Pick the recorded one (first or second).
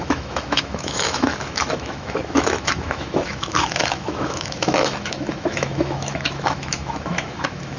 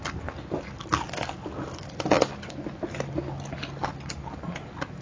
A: second